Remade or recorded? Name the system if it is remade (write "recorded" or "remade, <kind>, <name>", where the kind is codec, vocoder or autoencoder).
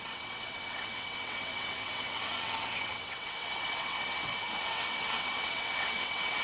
remade, vocoder, WaveNeXt